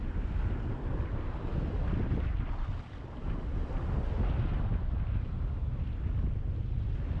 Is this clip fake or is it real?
real